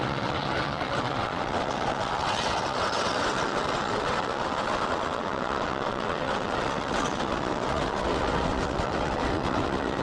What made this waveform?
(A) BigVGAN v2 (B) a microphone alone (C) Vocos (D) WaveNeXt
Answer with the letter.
D